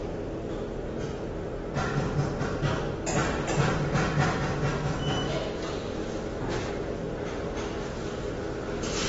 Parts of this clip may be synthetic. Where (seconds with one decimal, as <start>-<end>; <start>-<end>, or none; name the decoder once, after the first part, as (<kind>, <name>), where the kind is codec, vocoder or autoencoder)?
4.7-5.6 (autoencoder, DAC-VAE); 6.0-6.7